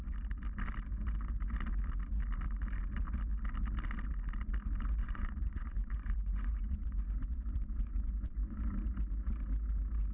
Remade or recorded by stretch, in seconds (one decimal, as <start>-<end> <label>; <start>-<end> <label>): 0.0-5.0 recorded; 5.0-8.6 remade; 8.6-10.1 recorded